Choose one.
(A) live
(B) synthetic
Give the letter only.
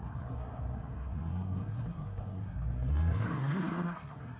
B